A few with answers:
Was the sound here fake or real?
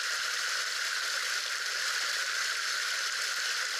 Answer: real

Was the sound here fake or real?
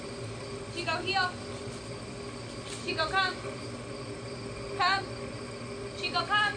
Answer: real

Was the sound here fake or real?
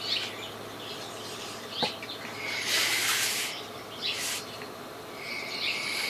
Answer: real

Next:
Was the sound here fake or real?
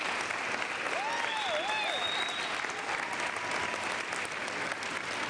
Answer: real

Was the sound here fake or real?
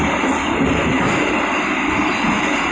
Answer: real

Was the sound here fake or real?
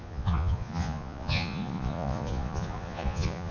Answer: fake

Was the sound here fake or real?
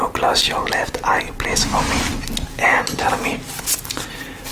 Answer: real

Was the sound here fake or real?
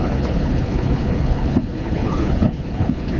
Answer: fake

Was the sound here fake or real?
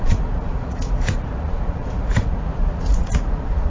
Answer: fake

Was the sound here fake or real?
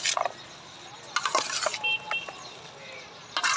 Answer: real